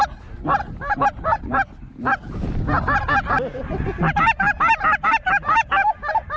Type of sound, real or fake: real